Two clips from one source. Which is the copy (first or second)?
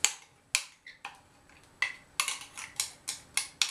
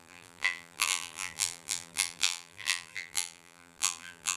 second